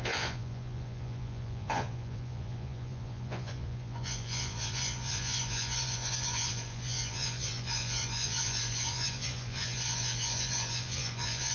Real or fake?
fake